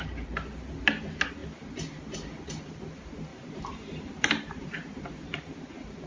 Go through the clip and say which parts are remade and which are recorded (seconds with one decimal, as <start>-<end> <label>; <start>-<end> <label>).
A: 0.0-3.3 recorded; 3.3-5.1 remade; 5.1-6.1 recorded